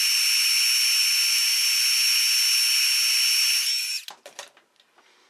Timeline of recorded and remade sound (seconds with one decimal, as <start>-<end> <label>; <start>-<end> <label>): 0.0-5.3 recorded

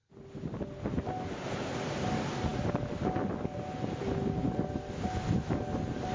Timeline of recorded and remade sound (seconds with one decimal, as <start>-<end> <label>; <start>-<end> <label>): 0.0-6.1 recorded

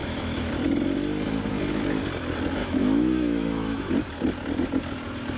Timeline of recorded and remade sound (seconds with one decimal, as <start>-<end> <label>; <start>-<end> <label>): 0.0-0.5 remade; 0.5-2.6 recorded; 2.6-3.9 remade; 3.9-5.4 recorded